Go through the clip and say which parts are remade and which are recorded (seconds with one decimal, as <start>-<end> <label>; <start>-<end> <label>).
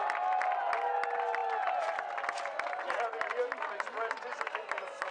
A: 0.0-5.1 recorded